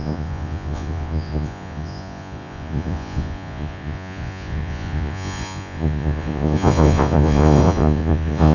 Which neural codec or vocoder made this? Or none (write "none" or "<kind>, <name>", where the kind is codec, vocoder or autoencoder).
vocoder, Vocos